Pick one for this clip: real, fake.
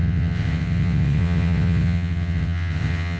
fake